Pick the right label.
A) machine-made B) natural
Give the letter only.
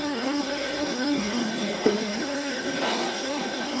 A